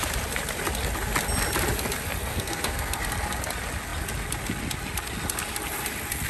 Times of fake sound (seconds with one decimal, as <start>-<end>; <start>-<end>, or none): 2.3-3.0